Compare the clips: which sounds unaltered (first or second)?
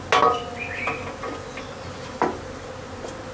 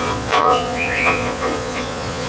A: first